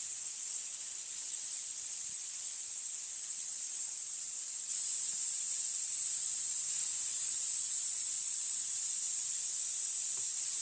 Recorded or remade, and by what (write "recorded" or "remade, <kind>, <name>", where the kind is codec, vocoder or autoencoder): remade, vocoder, BigVGAN v2